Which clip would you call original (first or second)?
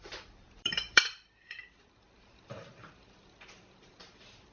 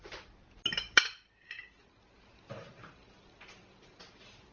second